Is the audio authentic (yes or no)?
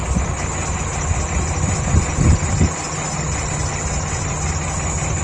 yes